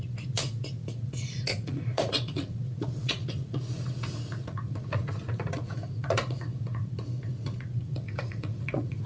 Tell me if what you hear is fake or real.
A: fake